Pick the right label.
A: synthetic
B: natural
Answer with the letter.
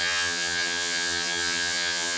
A